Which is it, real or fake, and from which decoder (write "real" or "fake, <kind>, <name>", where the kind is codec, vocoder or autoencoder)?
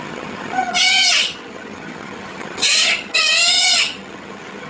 fake, vocoder, HiFi-GAN